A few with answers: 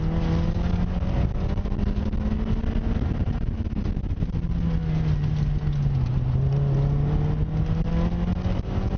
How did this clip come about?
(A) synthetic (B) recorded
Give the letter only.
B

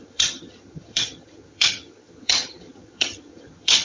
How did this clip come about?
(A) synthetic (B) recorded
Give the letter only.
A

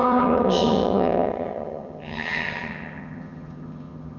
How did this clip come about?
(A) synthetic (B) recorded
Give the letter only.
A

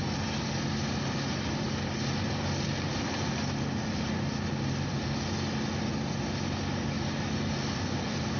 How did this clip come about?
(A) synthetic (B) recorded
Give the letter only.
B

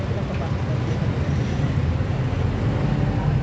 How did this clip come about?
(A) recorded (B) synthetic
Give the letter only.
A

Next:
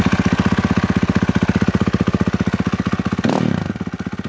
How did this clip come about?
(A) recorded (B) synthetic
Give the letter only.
A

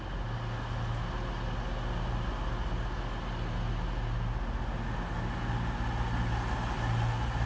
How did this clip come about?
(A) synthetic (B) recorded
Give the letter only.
B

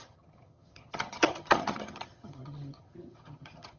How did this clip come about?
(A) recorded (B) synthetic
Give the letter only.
B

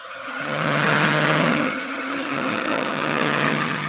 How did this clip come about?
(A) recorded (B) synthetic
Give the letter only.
B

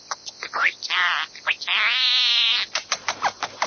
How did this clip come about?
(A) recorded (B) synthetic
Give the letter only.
A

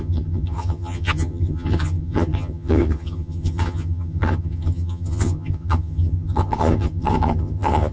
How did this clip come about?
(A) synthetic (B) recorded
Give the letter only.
A